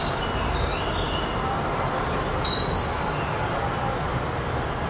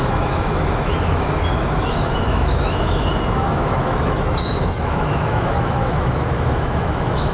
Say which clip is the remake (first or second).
second